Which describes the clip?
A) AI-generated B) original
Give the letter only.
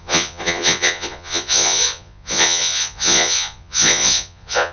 A